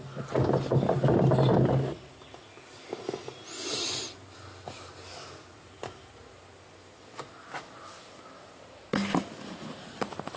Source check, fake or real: real